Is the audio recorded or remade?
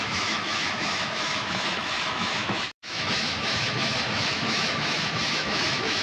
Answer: remade